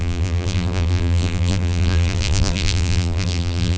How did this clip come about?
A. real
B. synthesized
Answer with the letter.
B